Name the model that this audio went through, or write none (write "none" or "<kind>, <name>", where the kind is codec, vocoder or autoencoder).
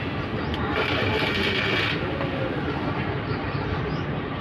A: none